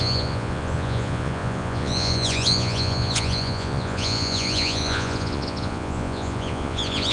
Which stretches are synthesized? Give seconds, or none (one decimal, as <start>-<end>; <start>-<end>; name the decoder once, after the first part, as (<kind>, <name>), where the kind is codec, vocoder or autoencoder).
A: 0.0-7.1 (vocoder, Vocos)